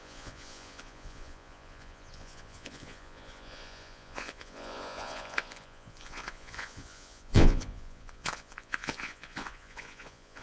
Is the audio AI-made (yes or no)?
yes